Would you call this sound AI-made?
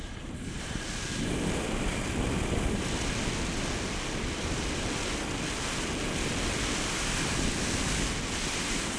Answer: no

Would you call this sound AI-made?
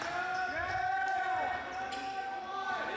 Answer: no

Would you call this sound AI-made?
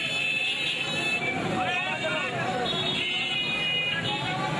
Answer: no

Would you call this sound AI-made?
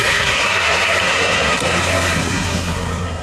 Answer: yes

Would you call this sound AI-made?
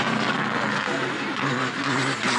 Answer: no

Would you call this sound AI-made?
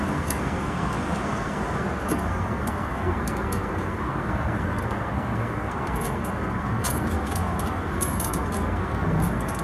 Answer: yes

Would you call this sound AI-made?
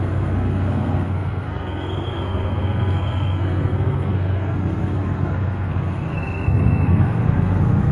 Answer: yes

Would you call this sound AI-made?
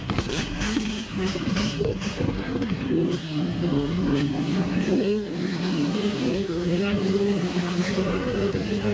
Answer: yes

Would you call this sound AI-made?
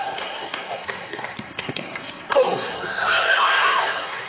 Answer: yes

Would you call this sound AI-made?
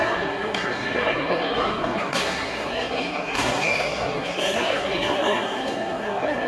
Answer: yes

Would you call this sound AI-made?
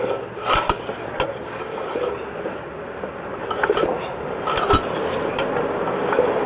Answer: no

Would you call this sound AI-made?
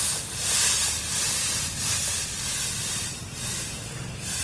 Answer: no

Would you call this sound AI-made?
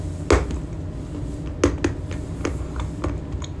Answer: no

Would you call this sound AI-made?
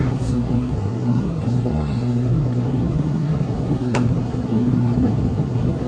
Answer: yes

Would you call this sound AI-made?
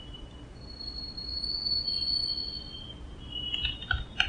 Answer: no